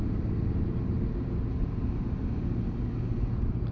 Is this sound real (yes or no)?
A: yes